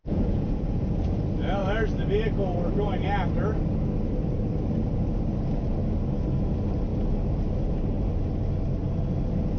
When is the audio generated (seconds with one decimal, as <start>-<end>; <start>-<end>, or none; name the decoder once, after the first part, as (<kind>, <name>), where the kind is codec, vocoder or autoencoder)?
0.0-1.2 (vocoder, Vocos)